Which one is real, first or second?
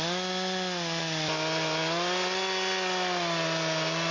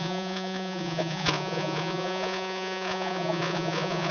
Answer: first